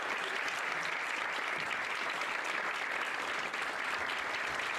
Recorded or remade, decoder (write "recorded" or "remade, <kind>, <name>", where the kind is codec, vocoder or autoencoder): remade, vocoder, BigVGAN v2